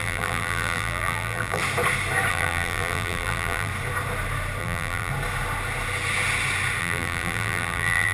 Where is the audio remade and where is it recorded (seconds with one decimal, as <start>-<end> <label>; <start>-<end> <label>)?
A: 0.0-1.6 remade; 1.6-2.3 recorded; 2.3-3.7 remade; 3.7-4.6 recorded; 4.6-5.1 remade; 5.1-6.8 recorded; 6.8-8.1 remade